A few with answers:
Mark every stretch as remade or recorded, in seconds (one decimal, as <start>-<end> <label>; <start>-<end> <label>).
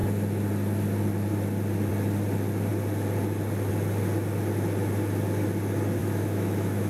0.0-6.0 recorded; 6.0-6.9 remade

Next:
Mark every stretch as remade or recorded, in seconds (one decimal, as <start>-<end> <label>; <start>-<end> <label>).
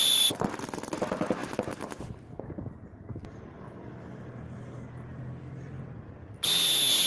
0.0-7.1 recorded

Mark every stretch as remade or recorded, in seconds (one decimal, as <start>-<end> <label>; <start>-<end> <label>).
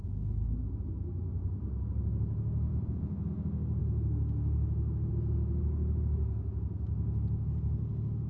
0.0-2.7 recorded; 2.7-3.3 remade; 3.3-8.3 recorded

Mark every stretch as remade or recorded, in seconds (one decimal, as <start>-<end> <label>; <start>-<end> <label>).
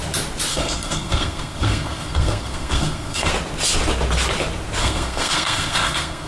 0.0-0.5 recorded; 0.5-3.3 remade; 3.3-4.8 recorded; 4.8-6.3 remade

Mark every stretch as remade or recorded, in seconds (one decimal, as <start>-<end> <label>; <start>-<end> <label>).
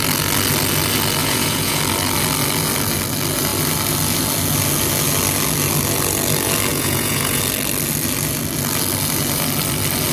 0.0-1.2 recorded; 1.2-1.8 remade; 1.8-6.7 recorded; 6.7-7.4 remade; 7.4-10.1 recorded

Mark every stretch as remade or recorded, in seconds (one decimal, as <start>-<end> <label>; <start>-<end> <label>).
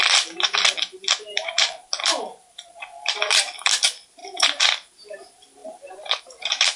0.0-6.8 remade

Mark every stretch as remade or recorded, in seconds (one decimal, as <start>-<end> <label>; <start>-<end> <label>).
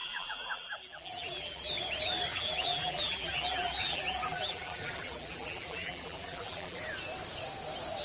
0.0-1.7 remade; 1.7-2.3 recorded; 2.3-6.8 remade; 6.8-8.0 recorded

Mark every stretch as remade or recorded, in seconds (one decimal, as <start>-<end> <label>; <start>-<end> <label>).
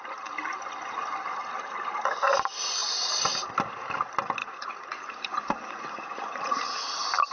0.0-4.4 recorded; 4.4-6.8 remade; 6.8-7.3 recorded